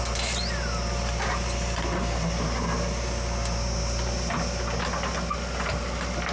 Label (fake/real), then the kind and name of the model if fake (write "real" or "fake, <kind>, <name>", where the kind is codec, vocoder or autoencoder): real